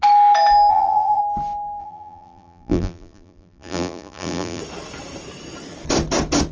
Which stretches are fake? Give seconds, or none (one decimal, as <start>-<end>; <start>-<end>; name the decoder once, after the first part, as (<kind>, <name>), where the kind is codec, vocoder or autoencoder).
0.7-1.2 (vocoder, BigVGAN v2); 1.8-4.6